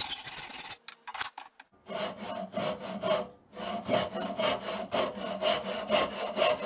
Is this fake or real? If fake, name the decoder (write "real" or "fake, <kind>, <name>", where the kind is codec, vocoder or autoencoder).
real